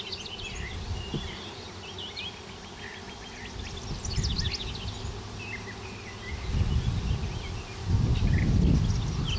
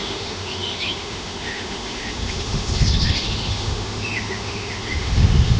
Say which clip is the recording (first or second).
first